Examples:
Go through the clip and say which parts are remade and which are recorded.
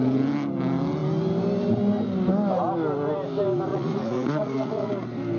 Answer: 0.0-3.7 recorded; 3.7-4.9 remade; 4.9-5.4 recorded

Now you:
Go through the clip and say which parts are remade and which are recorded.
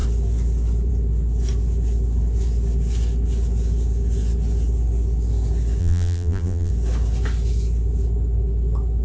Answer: 0.0-5.8 recorded; 5.8-6.7 remade; 6.7-9.0 recorded